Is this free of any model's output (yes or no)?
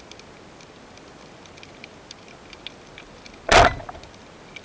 yes